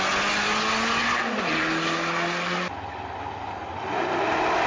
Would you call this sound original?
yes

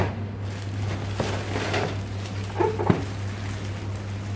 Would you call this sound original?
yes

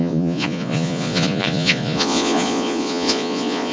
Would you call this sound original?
no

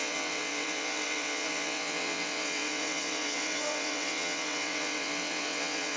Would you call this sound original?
no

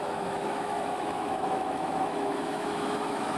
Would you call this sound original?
no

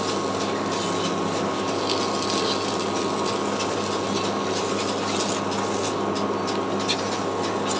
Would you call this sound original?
yes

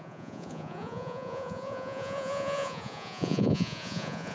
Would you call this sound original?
no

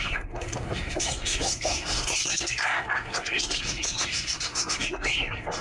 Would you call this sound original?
no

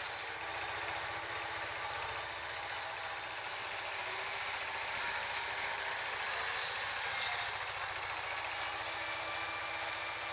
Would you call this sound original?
yes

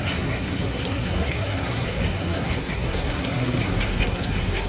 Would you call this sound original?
no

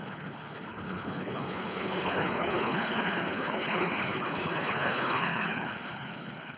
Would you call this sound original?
no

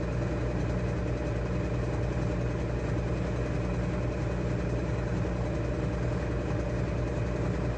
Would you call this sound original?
yes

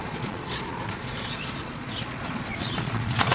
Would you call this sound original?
no